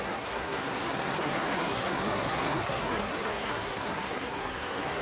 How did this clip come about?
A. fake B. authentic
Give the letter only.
A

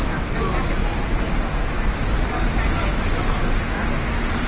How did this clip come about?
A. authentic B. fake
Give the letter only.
A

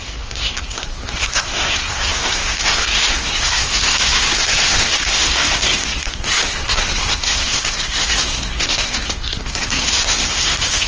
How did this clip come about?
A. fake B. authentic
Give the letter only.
A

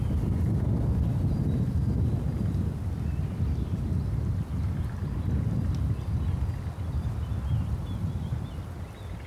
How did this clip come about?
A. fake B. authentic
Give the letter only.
B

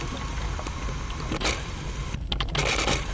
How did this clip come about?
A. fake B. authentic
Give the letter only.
B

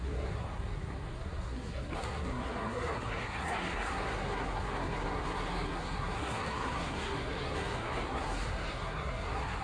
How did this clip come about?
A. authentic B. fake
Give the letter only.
B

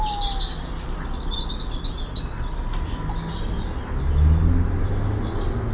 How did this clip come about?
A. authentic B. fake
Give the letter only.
A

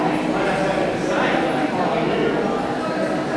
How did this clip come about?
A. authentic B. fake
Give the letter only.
A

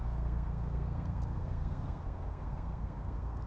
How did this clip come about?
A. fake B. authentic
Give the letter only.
A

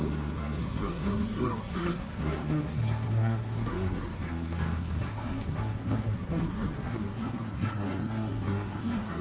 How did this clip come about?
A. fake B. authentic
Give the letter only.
A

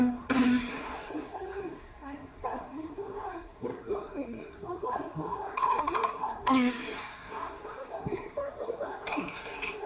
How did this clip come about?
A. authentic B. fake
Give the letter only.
B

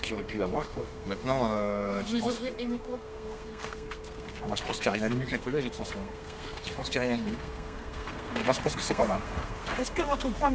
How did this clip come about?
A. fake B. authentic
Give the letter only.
A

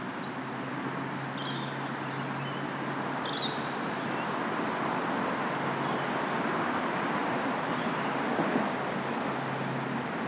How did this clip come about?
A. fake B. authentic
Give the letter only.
B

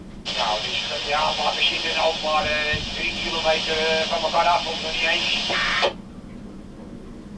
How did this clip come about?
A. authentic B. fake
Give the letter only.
A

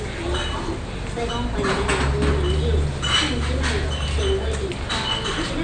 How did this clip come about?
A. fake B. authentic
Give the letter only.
B